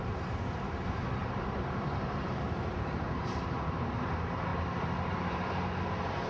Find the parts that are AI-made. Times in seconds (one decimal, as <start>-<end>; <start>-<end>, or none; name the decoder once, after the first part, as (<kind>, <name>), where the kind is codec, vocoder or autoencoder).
0.0-6.3 (vocoder, BigVGAN v2)